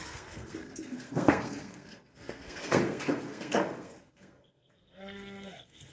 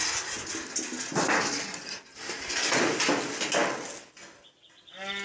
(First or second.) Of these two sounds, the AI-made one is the first